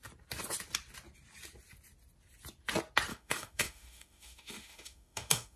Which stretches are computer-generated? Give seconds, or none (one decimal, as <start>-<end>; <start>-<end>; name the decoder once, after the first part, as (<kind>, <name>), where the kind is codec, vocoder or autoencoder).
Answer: 3.1-5.6 (autoencoder, DAC-VAE)